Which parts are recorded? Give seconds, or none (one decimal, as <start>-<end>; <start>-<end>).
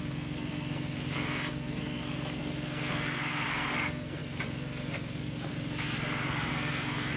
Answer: none